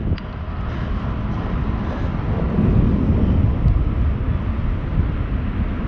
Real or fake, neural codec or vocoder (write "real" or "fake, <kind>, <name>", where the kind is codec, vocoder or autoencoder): real